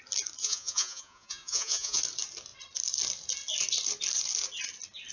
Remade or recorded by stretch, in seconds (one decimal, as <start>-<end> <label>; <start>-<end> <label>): 0.0-0.4 recorded; 0.4-2.0 remade; 2.0-5.1 recorded

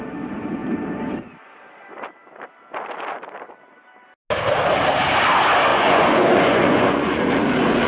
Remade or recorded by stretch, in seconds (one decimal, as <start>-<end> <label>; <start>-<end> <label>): 0.0-5.7 recorded; 5.7-7.3 remade; 7.3-7.9 recorded